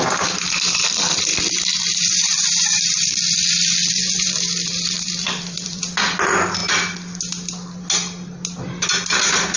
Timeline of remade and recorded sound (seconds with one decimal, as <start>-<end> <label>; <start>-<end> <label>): 0.0-1.3 recorded; 1.3-5.8 remade; 5.8-9.6 recorded